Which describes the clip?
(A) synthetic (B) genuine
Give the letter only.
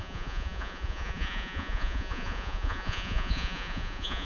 A